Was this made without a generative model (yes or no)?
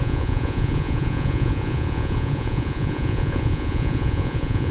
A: no